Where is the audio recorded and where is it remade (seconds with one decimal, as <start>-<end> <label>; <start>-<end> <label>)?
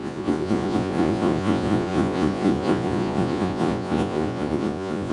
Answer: 0.0-5.1 remade